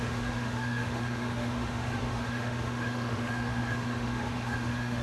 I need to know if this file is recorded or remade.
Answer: remade